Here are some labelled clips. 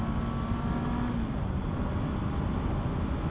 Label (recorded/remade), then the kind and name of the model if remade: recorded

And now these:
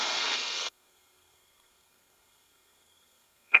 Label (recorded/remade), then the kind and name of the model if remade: remade, codec, SNAC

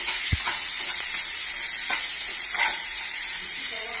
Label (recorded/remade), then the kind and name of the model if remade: remade, vocoder, Vocos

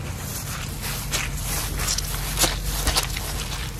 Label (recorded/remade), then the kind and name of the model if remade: recorded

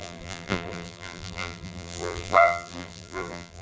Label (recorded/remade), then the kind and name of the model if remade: remade, vocoder, BigVGAN v2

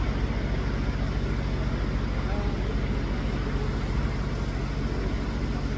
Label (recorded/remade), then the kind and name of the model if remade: recorded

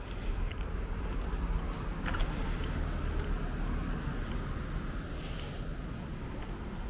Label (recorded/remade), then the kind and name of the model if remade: recorded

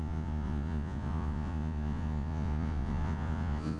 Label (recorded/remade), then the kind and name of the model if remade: remade, vocoder, Vocos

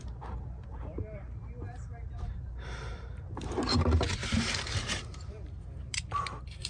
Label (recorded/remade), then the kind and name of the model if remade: remade, vocoder, BigVGAN v2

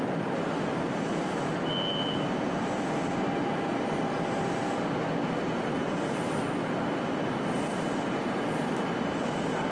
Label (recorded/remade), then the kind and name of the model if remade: recorded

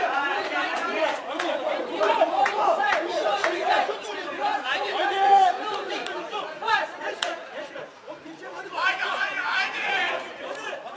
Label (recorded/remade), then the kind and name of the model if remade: remade, vocoder, Vocos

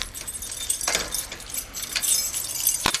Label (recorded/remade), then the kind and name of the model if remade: remade, vocoder, BigVGAN v2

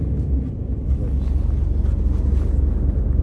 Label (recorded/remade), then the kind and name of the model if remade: recorded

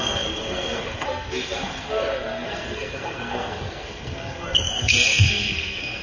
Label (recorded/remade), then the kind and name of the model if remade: remade, codec, SNAC